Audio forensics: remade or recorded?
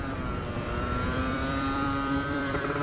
remade